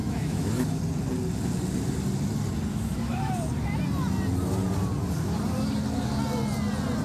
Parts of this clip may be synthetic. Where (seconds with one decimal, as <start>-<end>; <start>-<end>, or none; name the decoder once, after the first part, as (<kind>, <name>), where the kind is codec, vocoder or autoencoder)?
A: 0.0-0.8 (autoencoder, DAC-VAE); 2.7-3.3